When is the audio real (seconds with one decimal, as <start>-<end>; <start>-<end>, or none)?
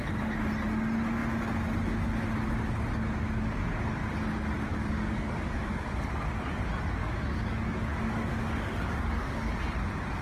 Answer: 0.0-4.7; 5.8-7.0; 9.6-10.2